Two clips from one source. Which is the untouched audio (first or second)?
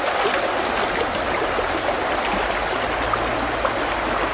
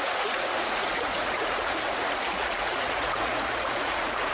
first